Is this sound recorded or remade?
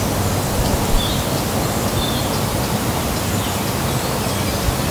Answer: recorded